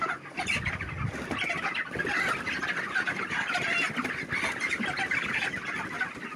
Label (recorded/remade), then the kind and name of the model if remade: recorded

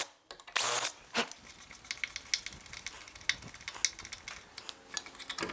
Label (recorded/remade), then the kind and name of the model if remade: recorded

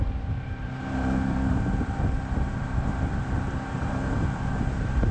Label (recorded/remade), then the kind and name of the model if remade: remade, vocoder, BigVGAN v2